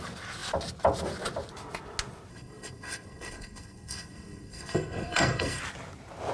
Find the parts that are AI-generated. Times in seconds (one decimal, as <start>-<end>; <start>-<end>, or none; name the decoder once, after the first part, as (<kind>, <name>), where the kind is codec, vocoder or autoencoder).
2.3-5.6 (codec, SNAC)